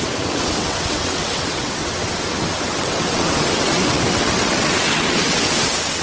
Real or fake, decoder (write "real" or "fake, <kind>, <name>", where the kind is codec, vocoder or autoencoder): fake, vocoder, WaveNeXt